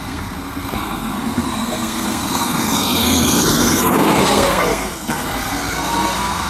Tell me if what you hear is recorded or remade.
remade